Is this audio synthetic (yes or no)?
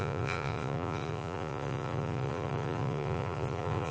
yes